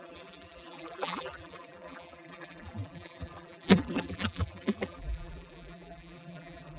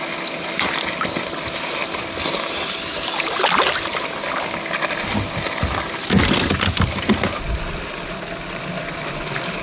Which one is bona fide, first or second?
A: second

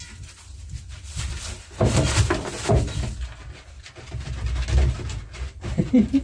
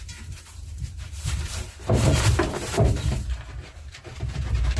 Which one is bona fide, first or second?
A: first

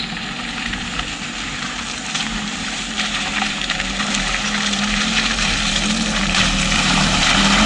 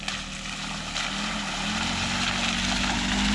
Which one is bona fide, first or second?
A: second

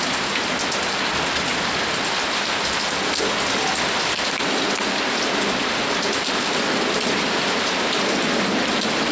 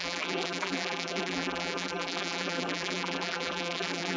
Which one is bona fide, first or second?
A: first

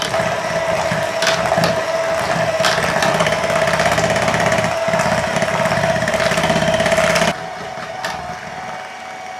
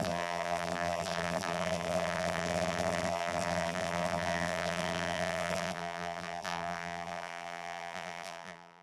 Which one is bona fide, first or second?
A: first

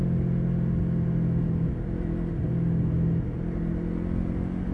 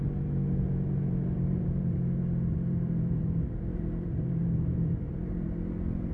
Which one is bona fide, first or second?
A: first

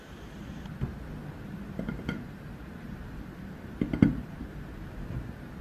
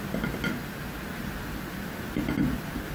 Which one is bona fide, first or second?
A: second